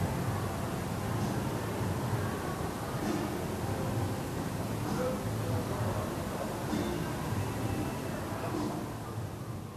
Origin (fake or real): real